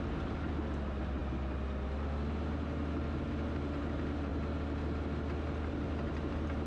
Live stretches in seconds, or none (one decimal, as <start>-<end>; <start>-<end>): 0.0-6.7